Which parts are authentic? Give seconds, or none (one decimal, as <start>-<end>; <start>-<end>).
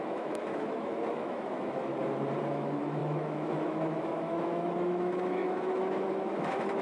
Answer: 1.9-2.5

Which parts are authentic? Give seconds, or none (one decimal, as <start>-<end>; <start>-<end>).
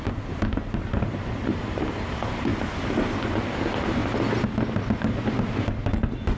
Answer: 2.5-3.5; 4.0-6.4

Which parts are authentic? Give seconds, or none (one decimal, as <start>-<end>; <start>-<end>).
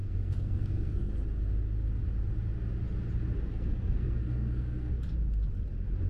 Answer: 1.1-3.5; 4.9-6.1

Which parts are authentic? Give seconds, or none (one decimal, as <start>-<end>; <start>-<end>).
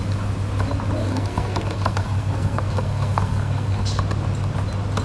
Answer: 0.0-1.0; 4.0-5.0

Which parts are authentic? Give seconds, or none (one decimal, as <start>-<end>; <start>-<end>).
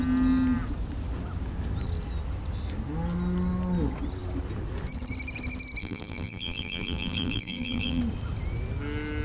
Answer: 0.0-5.8; 8.0-9.2